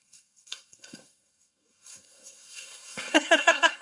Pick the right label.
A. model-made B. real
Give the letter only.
A